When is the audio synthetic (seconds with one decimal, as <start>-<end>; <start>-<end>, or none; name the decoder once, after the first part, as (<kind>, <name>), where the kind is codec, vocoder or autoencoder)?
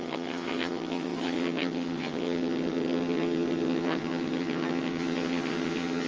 0.0-6.1 (vocoder, HiFi-GAN)